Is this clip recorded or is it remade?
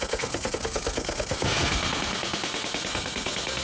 remade